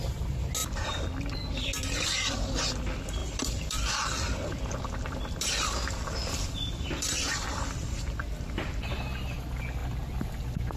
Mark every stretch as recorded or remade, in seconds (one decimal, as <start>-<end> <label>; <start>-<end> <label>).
0.0-3.2 recorded; 3.2-8.0 remade; 8.0-10.8 recorded